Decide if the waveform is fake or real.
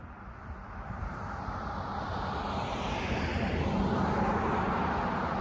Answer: real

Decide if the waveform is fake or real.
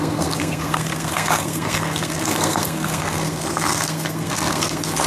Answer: fake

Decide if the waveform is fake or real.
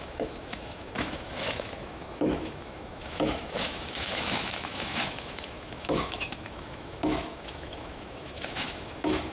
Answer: fake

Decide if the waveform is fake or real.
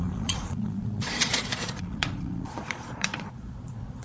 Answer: fake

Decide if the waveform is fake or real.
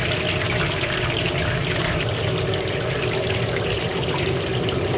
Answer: real